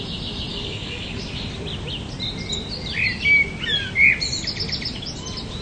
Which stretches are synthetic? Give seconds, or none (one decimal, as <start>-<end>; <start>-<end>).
0.5-1.2